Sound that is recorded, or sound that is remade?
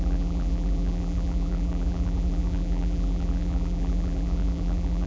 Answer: remade